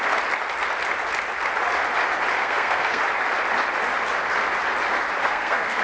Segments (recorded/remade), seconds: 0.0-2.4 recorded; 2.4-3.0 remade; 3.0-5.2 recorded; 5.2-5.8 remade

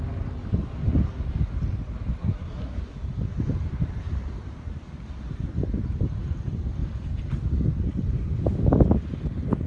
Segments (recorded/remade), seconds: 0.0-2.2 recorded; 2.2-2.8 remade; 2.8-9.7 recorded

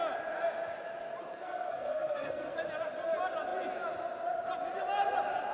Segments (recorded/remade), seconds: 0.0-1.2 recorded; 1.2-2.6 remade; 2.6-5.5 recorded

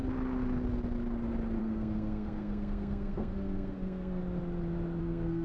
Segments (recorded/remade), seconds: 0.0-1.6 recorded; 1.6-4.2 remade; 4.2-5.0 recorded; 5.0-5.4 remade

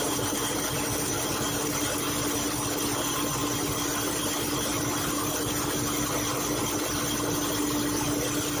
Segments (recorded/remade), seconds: 0.0-8.6 recorded